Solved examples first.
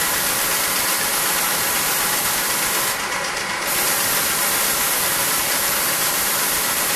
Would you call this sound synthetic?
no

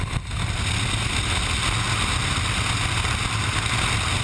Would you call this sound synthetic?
no